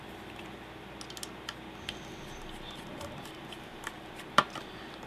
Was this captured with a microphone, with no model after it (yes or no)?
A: yes